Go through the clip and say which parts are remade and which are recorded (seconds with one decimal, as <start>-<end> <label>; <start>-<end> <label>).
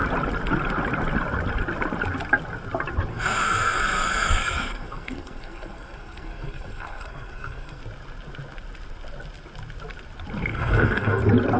0.0-3.1 recorded; 3.1-7.8 remade; 7.8-10.5 recorded; 10.5-11.2 remade; 11.2-11.6 recorded